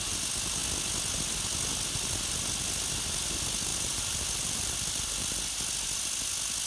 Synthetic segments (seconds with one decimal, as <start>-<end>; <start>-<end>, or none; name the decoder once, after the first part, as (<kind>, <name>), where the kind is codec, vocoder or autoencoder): 3.7-5.7 (vocoder, BigVGAN v2)